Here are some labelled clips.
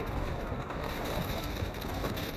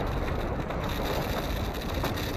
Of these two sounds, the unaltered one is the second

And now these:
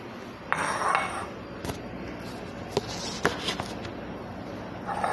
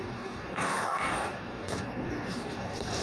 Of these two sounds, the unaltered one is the first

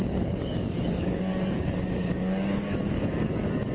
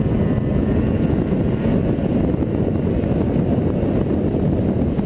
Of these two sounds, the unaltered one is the second